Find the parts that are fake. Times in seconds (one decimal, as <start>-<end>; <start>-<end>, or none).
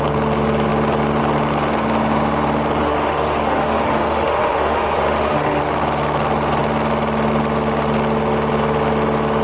2.8-5.6